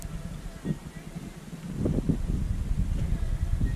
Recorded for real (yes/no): yes